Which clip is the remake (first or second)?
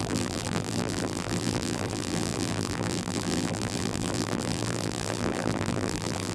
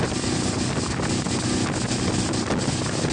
first